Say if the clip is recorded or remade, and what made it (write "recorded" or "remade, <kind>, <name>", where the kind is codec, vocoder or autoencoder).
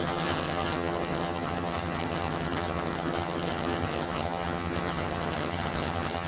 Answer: remade, vocoder, HiFi-GAN